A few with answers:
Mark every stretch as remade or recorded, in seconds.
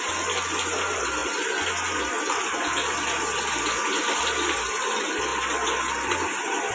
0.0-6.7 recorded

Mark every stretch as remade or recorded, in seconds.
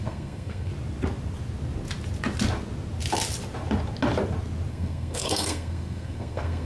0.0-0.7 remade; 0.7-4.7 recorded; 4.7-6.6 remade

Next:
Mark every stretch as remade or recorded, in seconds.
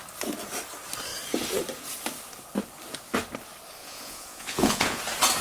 0.0-3.8 recorded; 3.8-5.0 remade; 5.0-5.4 recorded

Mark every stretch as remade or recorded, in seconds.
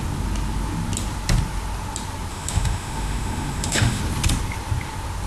0.0-2.3 recorded; 2.3-4.0 remade; 4.0-5.3 recorded